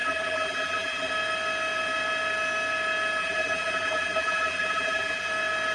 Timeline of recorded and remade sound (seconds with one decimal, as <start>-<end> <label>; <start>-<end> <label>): 0.0-1.1 remade; 1.1-3.2 recorded; 3.2-5.3 remade; 5.3-5.7 recorded